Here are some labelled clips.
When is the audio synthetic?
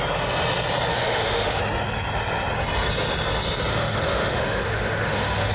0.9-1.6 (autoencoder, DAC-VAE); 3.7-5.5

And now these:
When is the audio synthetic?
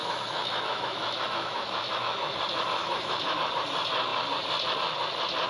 0.0-2.4 (autoencoder, DAC-VAE); 2.8-3.4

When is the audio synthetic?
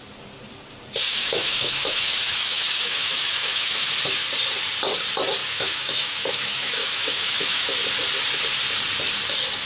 1.1-3.9 (autoencoder, DAC-VAE); 5.4-7.7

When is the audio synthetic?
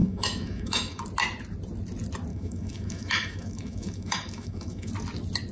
0.0-1.0 (autoencoder, DAC-VAE); 2.3-4.9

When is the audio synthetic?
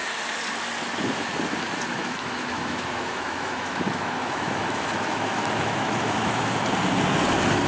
2.0-6.5 (autoencoder, DAC-VAE)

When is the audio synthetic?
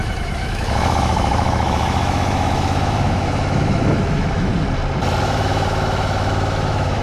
0.0-4.5 (autoencoder, DAC-VAE); 5.2-7.0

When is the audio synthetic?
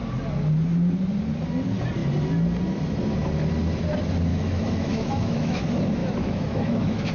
4.3-5.6 (autoencoder, DAC-VAE); 6.0-7.1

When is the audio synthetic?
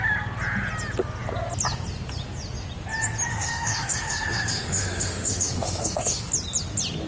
3.3-6.3 (autoencoder, DAC-VAE)